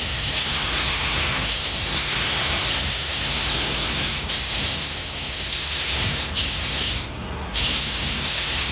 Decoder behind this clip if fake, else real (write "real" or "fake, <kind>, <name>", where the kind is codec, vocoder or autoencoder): fake, codec, SNAC